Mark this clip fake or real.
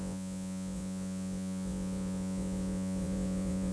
fake